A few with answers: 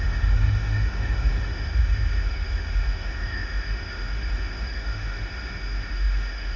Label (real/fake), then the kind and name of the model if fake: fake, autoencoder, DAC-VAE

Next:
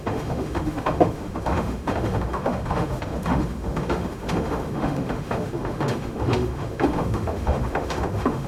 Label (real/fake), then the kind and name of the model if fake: fake, autoencoder, DAC-VAE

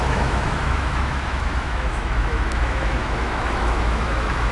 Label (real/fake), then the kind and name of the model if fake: fake, autoencoder, DAC-VAE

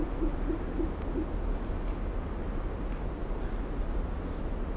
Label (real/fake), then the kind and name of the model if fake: real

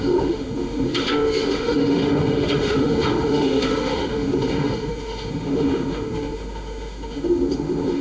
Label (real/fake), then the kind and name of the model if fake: fake, autoencoder, DAC-VAE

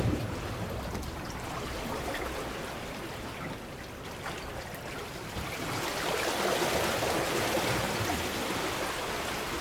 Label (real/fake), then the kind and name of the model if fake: real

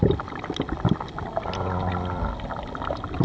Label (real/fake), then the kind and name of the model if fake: real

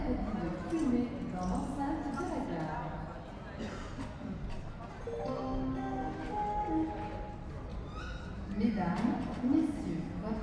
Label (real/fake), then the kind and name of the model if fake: real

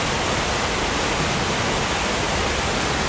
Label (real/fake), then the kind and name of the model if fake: real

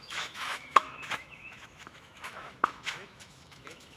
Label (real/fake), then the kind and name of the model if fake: fake, autoencoder, DAC-VAE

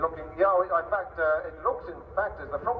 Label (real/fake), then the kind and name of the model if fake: real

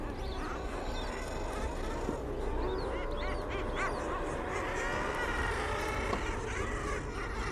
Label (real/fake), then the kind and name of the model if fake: real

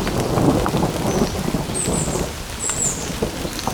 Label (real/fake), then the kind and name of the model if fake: real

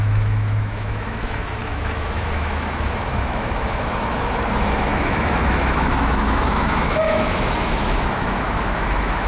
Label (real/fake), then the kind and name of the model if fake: fake, autoencoder, DAC-VAE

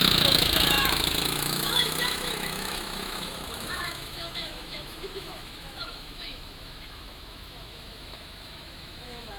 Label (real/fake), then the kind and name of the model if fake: fake, autoencoder, DAC-VAE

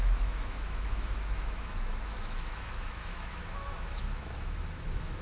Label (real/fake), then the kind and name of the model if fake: fake, autoencoder, DAC-VAE